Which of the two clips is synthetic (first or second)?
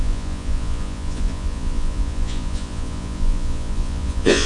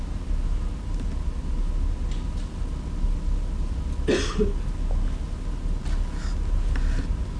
first